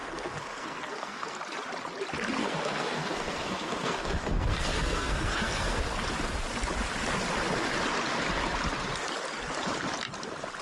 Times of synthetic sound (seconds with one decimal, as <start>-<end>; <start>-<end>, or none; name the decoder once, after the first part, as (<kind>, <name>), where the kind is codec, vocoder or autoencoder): 0.0-1.4 (codec, SNAC); 2.4-5.8